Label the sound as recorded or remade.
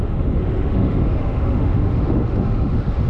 remade